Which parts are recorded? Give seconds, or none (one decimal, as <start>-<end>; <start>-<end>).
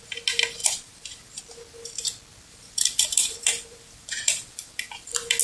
0.0-0.6; 1.4-2.3